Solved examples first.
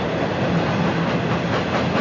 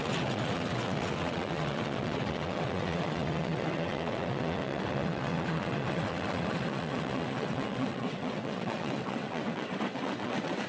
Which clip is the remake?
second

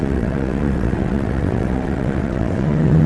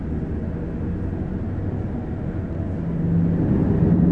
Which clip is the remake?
first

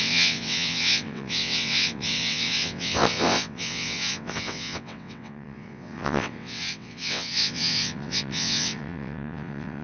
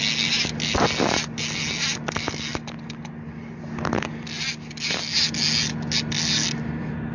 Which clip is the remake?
first